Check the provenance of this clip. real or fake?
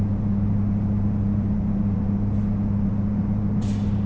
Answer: fake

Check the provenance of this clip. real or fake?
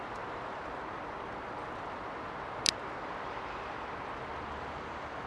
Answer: real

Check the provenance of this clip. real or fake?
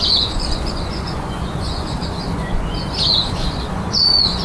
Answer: fake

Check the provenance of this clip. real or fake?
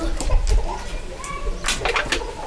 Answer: real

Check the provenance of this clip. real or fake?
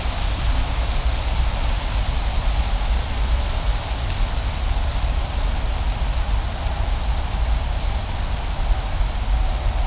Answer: real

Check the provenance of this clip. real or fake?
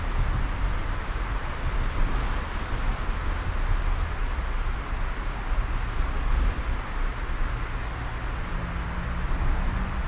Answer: real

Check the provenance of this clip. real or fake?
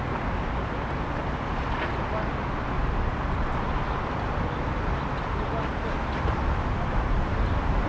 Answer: real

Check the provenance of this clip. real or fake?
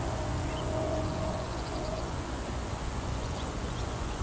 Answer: fake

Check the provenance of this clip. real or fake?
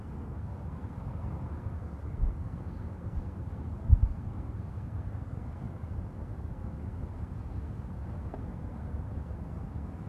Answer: fake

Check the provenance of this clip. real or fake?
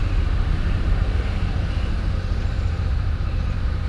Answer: fake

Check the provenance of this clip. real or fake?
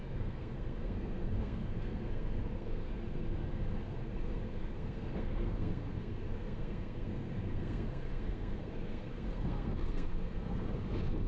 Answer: fake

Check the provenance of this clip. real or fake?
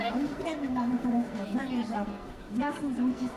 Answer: fake